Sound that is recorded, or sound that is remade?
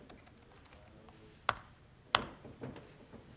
recorded